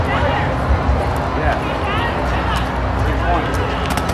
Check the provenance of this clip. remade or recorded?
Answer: recorded